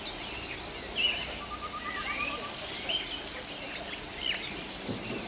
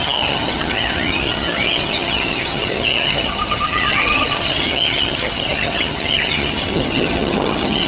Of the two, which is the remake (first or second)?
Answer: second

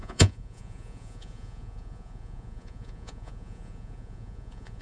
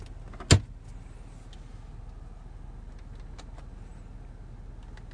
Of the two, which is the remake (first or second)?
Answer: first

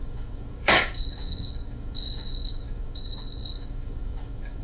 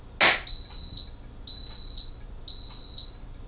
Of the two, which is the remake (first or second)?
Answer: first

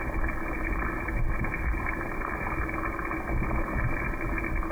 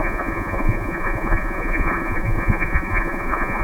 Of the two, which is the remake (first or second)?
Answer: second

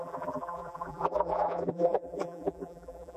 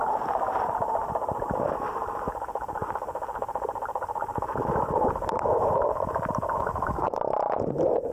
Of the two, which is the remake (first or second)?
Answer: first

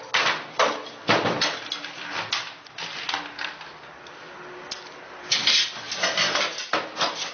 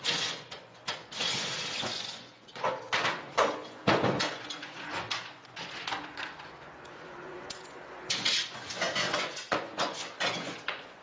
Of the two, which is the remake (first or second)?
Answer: second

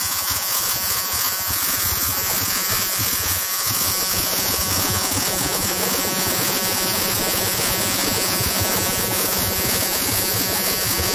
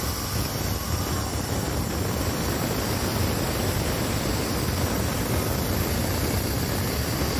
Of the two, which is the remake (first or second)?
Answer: first